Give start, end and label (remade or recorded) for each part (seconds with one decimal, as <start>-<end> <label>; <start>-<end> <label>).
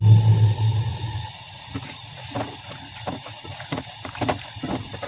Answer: 0.0-0.9 recorded; 0.9-4.0 remade; 4.0-5.1 recorded